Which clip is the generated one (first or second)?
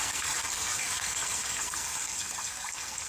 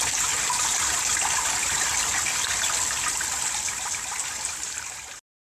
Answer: first